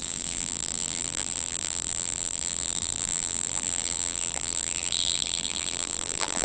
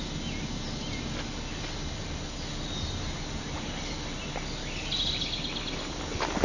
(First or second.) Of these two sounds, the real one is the second